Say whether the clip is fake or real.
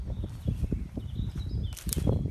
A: real